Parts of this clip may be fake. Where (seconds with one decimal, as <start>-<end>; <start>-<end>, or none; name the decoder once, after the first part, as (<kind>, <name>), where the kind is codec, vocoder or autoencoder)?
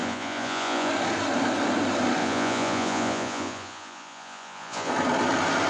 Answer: 0.0-0.9 (vocoder, Vocos); 2.2-4.9